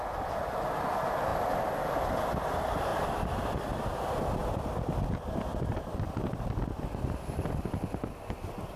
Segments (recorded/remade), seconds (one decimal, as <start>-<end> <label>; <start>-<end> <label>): 0.0-1.3 recorded; 1.3-1.9 remade; 1.9-4.4 recorded; 4.4-5.7 remade; 5.7-8.8 recorded